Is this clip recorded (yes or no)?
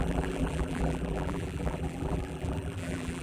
no